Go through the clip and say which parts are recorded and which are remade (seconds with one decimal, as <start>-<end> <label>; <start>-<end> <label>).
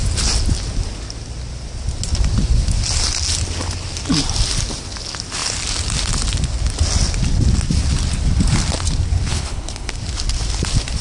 0.0-9.3 recorded; 9.3-9.9 remade; 9.9-11.0 recorded